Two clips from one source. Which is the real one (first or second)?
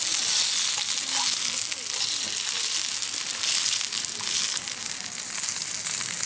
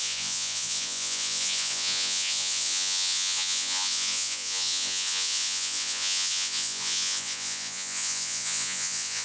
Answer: first